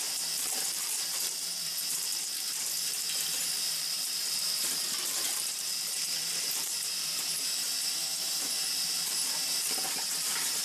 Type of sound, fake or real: fake